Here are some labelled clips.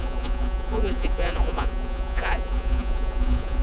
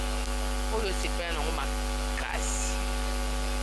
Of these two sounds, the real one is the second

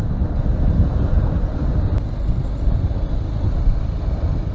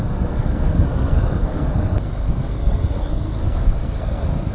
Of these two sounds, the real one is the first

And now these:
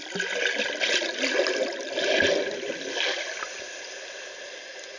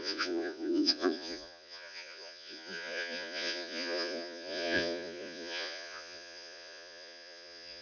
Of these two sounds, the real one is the first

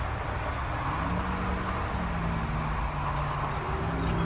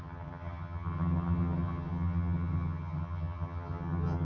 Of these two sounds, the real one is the first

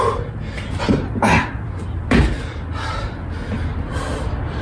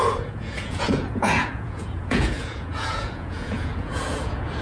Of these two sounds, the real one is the first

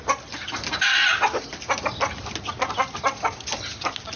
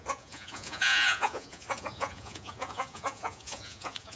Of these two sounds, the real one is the first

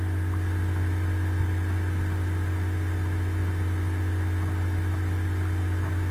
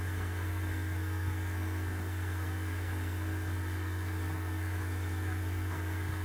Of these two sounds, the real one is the first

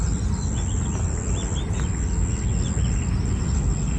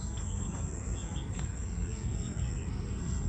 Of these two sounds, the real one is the first